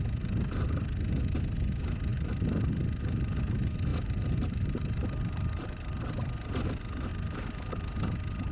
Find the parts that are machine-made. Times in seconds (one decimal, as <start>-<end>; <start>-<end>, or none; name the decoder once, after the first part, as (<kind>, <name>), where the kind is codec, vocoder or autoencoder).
2.1-3.4 (vocoder, BigVGAN v2); 3.9-6.0; 7.1-7.7